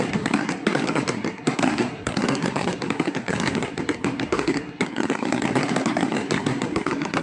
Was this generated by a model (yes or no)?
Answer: yes